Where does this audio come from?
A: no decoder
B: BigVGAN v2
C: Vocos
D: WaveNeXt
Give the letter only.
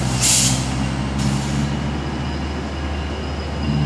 A